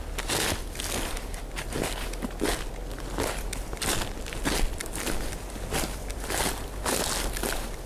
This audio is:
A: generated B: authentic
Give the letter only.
B